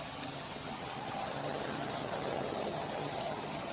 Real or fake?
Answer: fake